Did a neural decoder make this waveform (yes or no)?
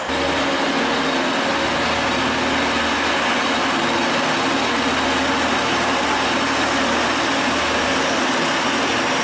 no